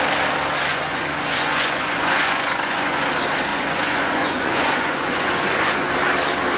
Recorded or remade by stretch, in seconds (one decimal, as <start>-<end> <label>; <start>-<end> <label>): 0.0-0.7 recorded; 0.7-3.1 remade; 3.1-3.5 recorded; 3.5-5.9 remade; 5.9-6.6 recorded